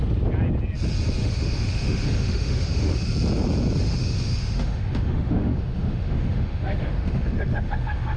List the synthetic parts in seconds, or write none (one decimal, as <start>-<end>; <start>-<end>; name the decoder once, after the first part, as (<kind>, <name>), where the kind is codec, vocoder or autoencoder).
1.2-3.1 (autoencoder, DAC-VAE); 3.8-8.2